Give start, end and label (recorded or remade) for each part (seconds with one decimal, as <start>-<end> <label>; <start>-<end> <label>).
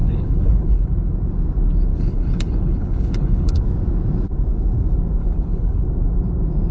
0.0-0.9 remade; 0.9-1.9 recorded; 1.9-3.6 remade; 3.6-5.2 recorded; 5.2-5.8 remade; 5.8-6.7 recorded